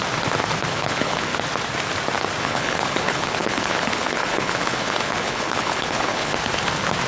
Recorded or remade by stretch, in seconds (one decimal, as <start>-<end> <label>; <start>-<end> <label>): 0.0-0.7 recorded; 0.7-1.3 remade; 1.3-2.4 recorded; 2.4-6.3 remade; 6.3-7.1 recorded